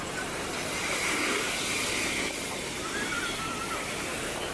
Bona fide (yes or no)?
yes